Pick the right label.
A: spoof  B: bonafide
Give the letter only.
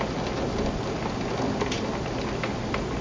B